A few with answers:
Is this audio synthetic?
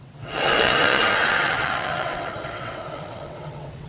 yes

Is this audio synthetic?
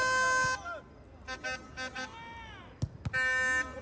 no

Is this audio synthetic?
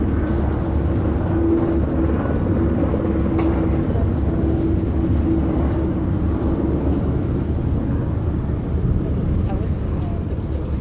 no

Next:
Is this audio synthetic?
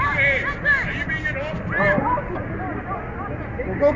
no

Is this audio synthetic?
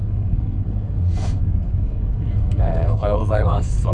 yes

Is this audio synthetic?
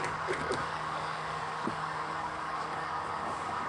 yes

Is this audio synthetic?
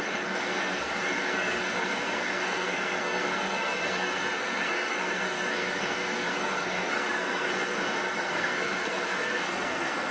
yes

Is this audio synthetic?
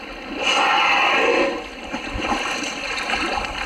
no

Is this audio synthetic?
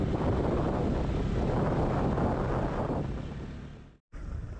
no